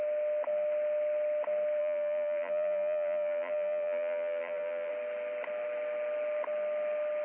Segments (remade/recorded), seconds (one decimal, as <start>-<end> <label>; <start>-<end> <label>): 0.0-1.8 recorded; 1.8-4.9 remade; 4.9-7.2 recorded